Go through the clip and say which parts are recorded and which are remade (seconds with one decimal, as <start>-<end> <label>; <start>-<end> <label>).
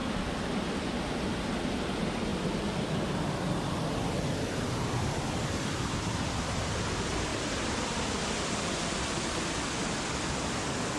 0.0-2.3 recorded; 2.3-4.6 remade; 4.6-11.0 recorded